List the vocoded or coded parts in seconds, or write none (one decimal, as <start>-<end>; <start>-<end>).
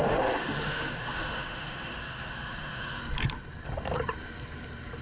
0.0-3.0